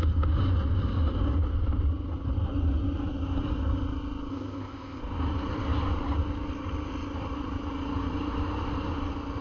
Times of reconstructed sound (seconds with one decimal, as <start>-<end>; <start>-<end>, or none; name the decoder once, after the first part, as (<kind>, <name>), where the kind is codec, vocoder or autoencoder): 4.3-5.0 (codec, ZipCodec)